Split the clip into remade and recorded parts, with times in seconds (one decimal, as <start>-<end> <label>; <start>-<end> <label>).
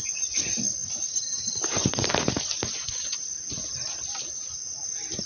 0.0-5.3 recorded